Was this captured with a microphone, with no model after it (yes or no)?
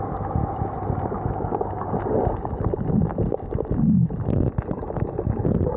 yes